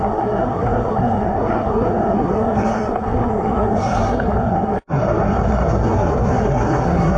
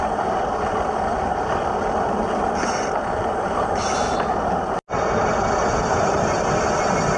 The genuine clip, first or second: second